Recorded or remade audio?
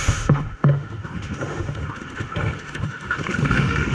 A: remade